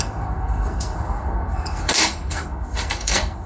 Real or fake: fake